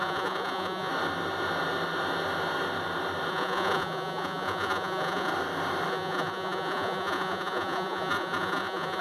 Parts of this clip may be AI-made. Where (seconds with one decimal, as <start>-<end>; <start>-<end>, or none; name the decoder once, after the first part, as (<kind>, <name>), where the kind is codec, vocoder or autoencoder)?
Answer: 0.0-0.9 (vocoder, Vocos); 3.3-5.3; 5.9-9.0